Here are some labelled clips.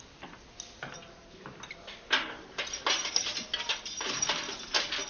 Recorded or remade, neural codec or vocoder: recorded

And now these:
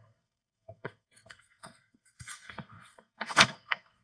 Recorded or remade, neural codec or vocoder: remade, codec, SNAC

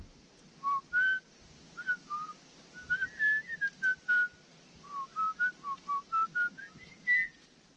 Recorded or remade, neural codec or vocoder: recorded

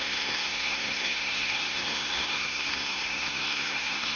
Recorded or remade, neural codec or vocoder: remade, codec, SNAC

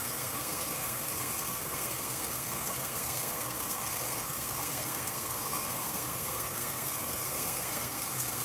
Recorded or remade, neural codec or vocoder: remade, codec, SNAC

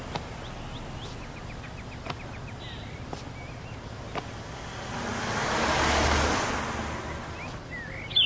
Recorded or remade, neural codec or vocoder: recorded